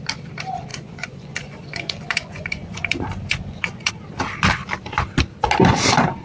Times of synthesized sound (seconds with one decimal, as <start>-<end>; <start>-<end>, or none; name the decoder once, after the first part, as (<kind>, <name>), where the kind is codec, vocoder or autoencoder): 0.7-3.9 (vocoder, Vocos)